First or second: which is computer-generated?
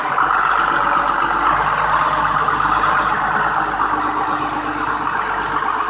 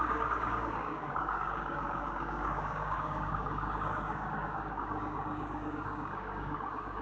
second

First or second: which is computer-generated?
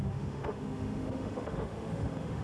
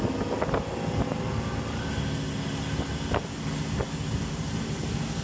first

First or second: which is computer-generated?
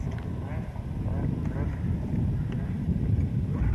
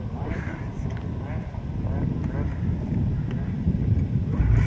first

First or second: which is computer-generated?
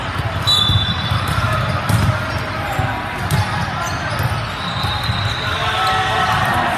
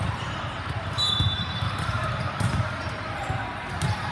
second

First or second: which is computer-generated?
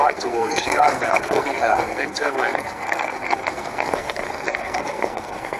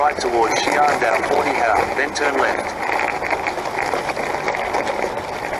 first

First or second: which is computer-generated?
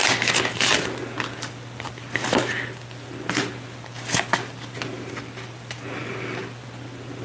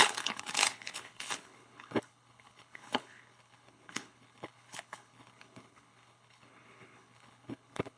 second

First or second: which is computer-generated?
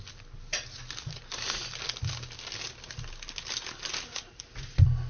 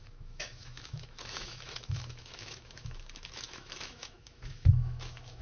second